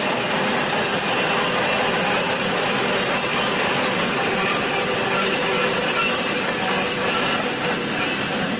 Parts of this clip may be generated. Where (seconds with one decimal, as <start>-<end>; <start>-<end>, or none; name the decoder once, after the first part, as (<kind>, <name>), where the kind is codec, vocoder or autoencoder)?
3.3-4.7 (vocoder, BigVGAN v2)